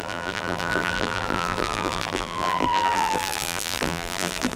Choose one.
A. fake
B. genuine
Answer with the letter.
A